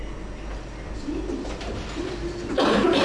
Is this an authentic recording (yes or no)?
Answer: yes